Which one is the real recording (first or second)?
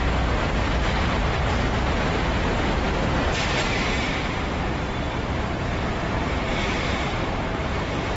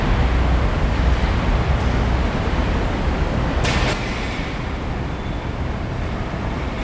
second